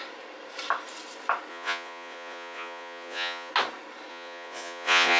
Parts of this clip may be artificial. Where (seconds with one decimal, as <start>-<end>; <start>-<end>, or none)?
1.5-3.5; 4.1-5.2